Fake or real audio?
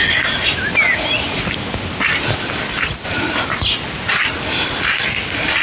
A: real